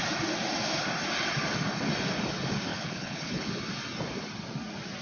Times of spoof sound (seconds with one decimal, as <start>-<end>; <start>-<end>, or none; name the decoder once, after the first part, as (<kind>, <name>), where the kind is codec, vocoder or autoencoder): 2.7-3.5 (codec, HILCodec)